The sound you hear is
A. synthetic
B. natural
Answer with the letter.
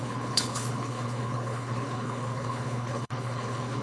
A